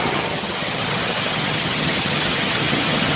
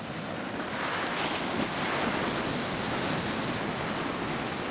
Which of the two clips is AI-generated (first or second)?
first